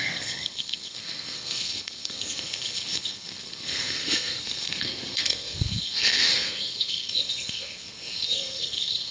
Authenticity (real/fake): fake